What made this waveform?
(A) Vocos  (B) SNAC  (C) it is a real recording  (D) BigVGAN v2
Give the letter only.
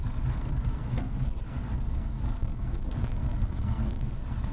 B